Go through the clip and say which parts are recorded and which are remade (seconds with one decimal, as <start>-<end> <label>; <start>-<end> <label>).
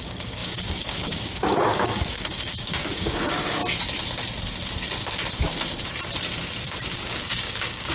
0.0-3.6 remade; 3.6-6.9 recorded; 6.9-7.9 remade